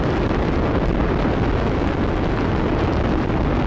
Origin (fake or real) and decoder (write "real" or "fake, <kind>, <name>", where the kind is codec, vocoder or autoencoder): real